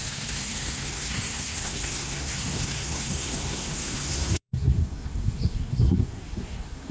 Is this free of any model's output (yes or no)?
no